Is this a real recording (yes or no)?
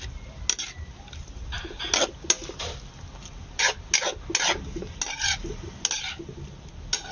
yes